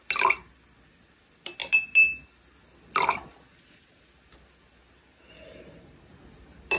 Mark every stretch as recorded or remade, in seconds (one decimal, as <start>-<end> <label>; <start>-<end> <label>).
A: 0.0-6.8 recorded